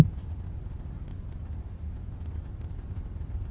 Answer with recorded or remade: recorded